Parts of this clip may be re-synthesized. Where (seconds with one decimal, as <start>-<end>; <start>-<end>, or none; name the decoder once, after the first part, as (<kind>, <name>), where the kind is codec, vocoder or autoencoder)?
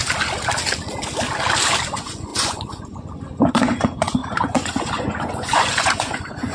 1.9-6.5 (vocoder, Vocos)